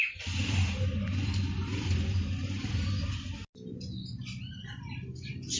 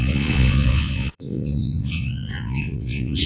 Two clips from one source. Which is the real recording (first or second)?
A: first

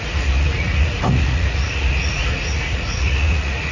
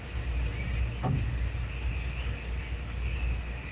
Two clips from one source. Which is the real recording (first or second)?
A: second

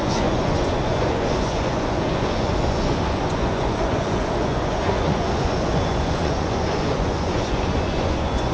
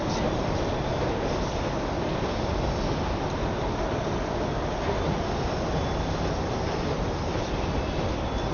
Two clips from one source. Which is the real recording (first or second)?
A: second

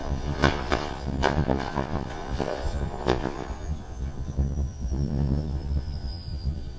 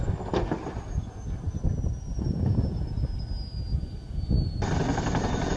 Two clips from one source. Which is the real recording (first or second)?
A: second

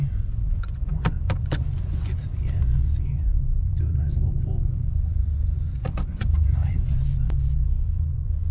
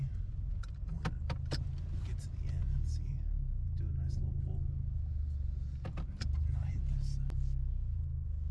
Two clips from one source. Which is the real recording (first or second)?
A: second